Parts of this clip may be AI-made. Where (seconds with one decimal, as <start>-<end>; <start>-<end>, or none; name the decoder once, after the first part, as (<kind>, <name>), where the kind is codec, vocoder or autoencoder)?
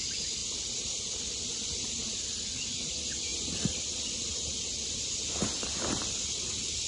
none